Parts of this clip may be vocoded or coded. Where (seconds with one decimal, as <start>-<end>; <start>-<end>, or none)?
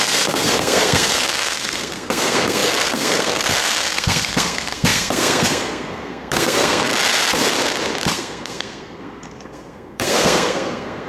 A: 0.0-6.9; 8.1-11.1